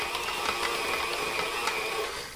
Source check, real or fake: real